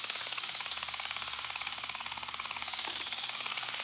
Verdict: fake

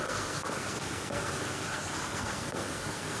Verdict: fake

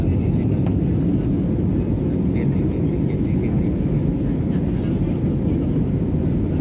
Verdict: real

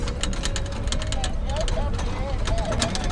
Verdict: real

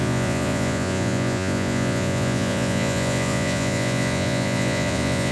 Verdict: fake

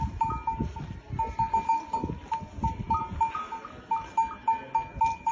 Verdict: real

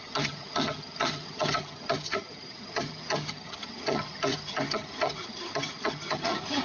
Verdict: fake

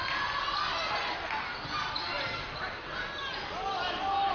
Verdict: real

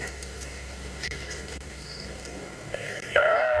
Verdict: fake